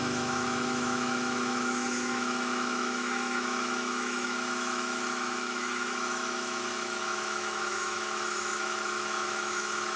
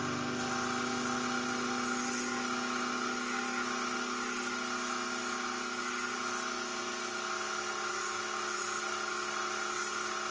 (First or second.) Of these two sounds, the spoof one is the first